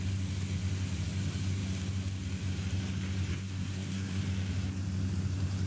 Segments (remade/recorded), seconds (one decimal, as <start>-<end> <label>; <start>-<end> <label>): 0.0-3.3 recorded; 3.3-4.2 remade; 4.2-5.7 recorded